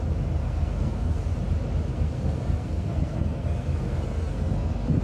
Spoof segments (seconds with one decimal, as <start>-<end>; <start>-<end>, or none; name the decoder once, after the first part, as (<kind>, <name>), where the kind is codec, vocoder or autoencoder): 0.4-1.3 (codec, SNAC); 1.9-5.0